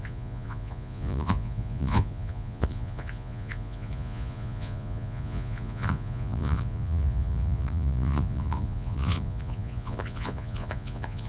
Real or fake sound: fake